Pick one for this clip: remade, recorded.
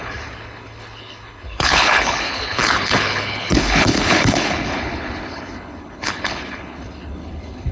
remade